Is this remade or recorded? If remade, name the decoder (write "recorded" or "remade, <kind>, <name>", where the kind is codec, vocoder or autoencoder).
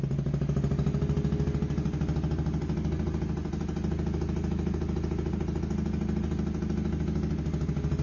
recorded